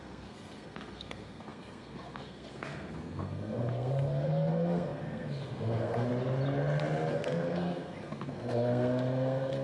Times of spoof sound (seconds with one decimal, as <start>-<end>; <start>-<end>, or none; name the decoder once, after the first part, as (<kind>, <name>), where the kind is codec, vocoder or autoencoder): 0.0-6.1 (codec, SNAC); 7.1-9.6

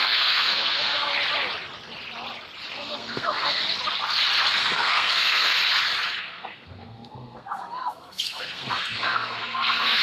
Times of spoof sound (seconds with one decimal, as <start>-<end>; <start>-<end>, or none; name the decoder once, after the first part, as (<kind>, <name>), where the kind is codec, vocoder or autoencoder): 0.0-1.1 (codec, SNAC); 2.7-3.6; 4.6-5.6; 6.2-10.0

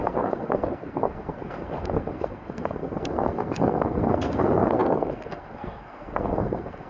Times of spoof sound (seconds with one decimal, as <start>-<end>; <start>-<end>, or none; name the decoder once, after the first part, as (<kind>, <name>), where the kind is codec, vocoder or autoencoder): 0.0-6.9 (codec, SNAC)

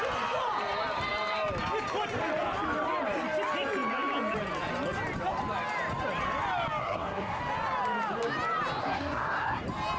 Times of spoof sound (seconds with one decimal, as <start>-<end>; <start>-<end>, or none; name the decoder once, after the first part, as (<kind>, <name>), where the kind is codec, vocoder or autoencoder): 6.8-7.4 (codec, SNAC); 8.8-9.6

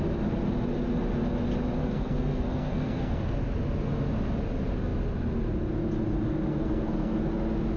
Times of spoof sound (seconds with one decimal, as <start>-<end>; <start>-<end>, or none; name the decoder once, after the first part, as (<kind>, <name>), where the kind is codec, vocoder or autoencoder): 1.8-3.4 (codec, SNAC); 6.5-7.2

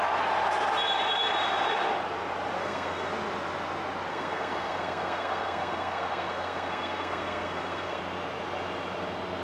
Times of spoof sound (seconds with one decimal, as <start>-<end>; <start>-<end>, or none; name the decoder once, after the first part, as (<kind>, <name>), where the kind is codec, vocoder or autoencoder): 2.6-3.1 (codec, SNAC); 4.1-8.0

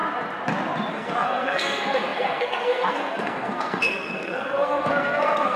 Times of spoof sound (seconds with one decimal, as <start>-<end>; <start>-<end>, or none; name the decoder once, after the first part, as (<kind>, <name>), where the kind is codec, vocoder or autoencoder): 0.9-5.6 (codec, SNAC)

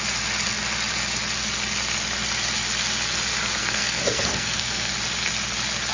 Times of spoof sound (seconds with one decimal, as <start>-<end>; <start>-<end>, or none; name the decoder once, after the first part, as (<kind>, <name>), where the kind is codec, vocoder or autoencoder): 3.6-4.9 (codec, SNAC)